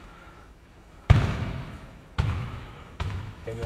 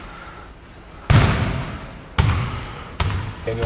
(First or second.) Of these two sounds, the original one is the second